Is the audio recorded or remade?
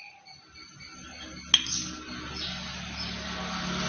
recorded